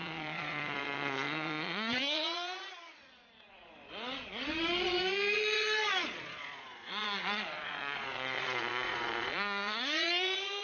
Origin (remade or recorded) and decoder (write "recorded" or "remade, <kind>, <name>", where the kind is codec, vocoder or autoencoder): remade, vocoder, Vocos